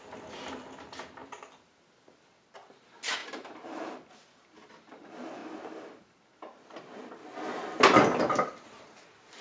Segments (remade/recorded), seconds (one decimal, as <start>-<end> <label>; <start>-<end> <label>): 0.0-1.2 recorded; 1.2-1.8 remade; 1.8-3.2 recorded; 3.2-4.7 remade; 4.7-5.4 recorded; 5.4-6.1 remade; 6.1-9.4 recorded

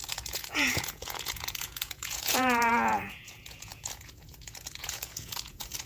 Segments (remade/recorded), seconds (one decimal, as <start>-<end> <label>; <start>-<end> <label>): 0.0-5.9 remade

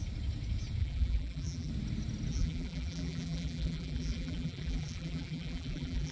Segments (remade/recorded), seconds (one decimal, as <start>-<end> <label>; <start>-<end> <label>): 0.0-0.8 recorded; 0.8-1.7 remade; 1.7-2.3 recorded; 2.3-6.1 remade

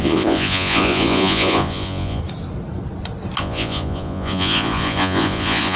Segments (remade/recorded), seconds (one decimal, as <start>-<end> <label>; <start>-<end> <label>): 0.0-2.2 remade; 2.2-3.4 recorded; 3.4-5.8 remade

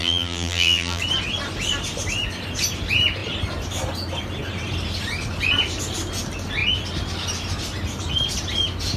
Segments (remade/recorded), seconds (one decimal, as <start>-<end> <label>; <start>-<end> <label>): 0.0-1.0 remade; 1.0-9.0 recorded

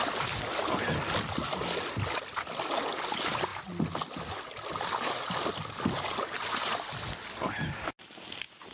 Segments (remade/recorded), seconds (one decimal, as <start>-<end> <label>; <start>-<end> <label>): 0.0-8.7 recorded